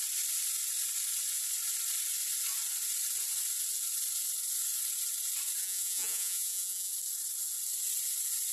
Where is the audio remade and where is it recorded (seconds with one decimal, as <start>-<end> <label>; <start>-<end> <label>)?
0.0-5.6 recorded; 5.6-6.9 remade; 6.9-8.5 recorded